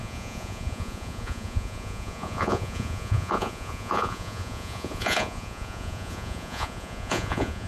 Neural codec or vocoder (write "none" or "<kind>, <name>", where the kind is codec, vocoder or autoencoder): vocoder, Vocos